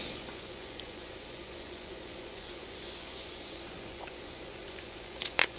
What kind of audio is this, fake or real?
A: fake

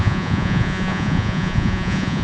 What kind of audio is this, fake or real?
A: fake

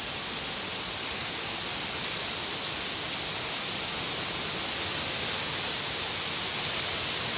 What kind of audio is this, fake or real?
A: real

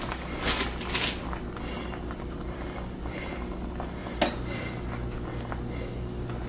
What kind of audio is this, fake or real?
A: real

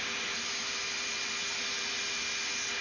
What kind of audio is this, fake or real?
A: real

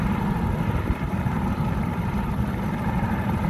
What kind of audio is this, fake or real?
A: real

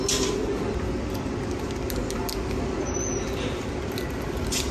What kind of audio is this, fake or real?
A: real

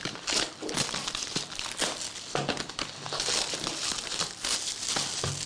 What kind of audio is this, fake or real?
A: real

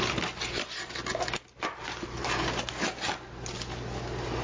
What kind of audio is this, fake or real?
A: real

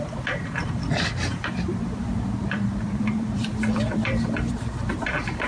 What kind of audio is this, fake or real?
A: fake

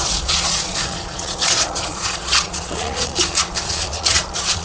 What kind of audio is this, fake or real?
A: fake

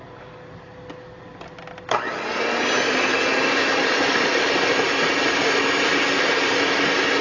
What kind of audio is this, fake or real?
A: real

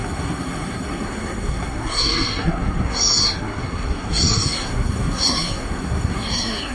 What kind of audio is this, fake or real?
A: fake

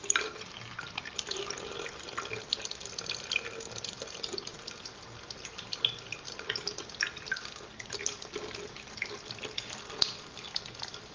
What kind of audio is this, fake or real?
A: real